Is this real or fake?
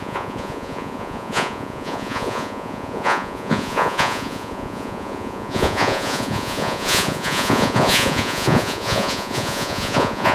fake